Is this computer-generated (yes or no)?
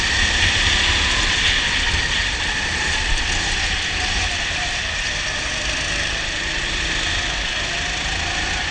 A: no